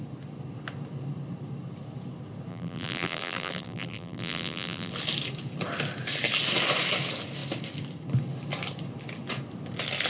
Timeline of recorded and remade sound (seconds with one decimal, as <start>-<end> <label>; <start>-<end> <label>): 0.0-2.5 recorded; 2.5-4.9 remade; 4.9-10.1 recorded